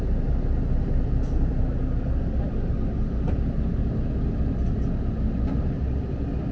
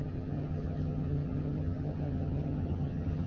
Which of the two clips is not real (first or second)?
second